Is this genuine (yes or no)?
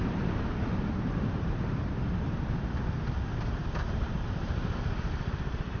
no